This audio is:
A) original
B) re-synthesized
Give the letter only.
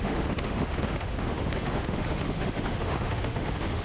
B